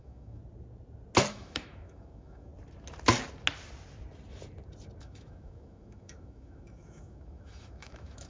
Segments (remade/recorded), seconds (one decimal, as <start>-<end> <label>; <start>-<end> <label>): 0.0-0.4 remade; 0.4-1.3 recorded; 1.3-2.5 remade; 2.5-5.0 recorded; 5.0-8.3 remade